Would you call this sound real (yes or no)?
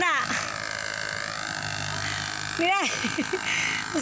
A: yes